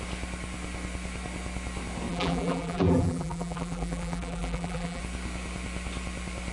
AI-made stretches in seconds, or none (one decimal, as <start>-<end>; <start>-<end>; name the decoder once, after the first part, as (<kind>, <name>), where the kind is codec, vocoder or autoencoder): 2.1-5.0 (vocoder, BigVGAN v2)